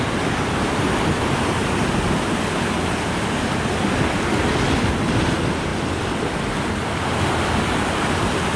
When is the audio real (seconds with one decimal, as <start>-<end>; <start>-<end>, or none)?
0.0-8.6